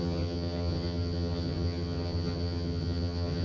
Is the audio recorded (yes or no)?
no